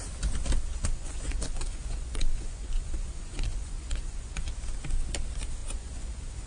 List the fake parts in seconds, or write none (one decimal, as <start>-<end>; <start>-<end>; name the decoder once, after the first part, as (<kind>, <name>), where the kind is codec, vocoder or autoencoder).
0.7-4.6 (vocoder, Vocos); 5.6-6.5

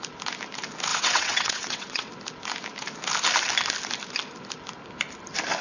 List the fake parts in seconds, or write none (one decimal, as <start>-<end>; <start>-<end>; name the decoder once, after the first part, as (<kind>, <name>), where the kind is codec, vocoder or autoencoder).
0.9-2.1 (vocoder, WaveNeXt)

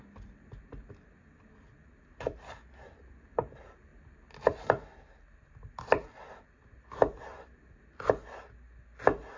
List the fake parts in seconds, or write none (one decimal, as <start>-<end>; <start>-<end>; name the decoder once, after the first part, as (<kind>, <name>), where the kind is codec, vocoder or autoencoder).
none

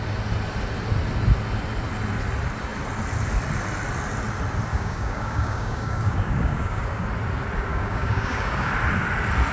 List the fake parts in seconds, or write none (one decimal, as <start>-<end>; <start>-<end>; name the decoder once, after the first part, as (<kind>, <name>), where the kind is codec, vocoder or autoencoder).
4.7-7.0 (codec, DAC); 7.7-8.7

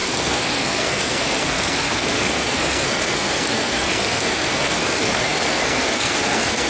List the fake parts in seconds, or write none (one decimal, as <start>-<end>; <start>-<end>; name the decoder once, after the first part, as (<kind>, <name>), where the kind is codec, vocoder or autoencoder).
0.0-6.7 (codec, SNAC)